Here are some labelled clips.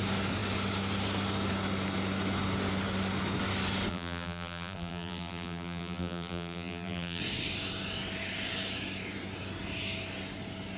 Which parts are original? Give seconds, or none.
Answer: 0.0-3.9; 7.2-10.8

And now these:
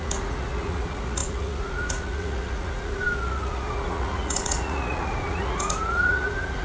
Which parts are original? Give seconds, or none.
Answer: none